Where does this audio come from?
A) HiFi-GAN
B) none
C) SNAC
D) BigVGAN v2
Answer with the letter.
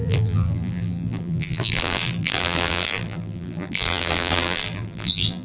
D